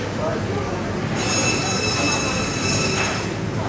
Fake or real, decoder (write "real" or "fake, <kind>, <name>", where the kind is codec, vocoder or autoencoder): real